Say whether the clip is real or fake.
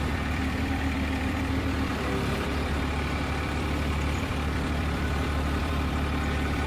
fake